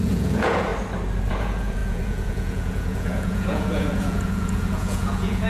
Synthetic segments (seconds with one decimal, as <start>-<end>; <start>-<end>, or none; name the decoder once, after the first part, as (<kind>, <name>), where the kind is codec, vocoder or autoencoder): 0.0-0.7 (vocoder, Vocos); 1.3-5.5